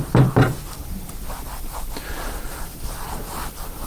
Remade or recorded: recorded